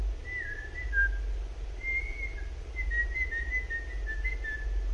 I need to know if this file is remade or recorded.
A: recorded